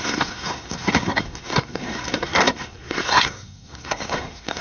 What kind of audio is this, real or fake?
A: fake